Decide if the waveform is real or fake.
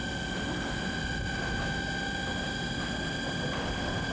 real